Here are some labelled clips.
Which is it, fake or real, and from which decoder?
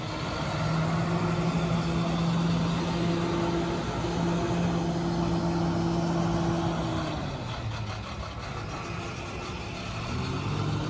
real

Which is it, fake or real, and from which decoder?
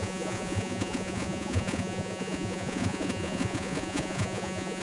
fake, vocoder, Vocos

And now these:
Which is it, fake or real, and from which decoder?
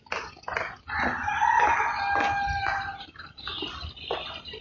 real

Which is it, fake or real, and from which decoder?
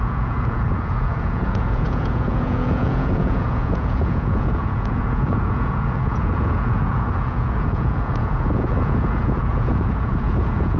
fake, vocoder, Vocos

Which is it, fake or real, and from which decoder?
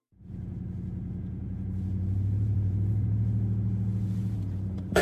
fake, vocoder, Vocos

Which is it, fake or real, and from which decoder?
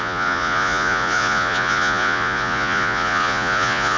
fake, vocoder, Vocos